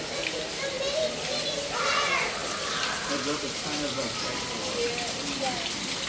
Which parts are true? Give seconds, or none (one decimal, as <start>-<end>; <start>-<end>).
0.0-6.1